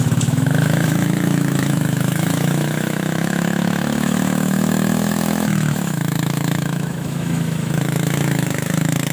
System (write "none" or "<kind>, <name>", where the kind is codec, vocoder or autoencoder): autoencoder, DAC-VAE